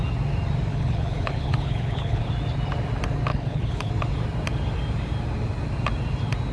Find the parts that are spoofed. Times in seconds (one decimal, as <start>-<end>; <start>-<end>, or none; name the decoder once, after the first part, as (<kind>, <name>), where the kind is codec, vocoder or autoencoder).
0.7-2.2 (codec, HILCodec); 3.3-3.9